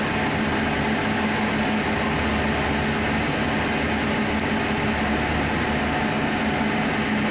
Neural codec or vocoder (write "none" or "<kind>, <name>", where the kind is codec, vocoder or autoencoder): none